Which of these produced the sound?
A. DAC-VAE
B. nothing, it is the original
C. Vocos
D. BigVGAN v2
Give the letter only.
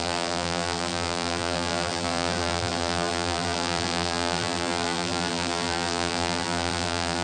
D